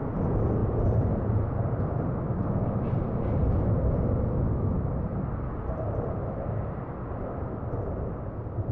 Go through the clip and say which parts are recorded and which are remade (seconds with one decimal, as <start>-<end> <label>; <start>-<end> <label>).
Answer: 0.0-8.7 recorded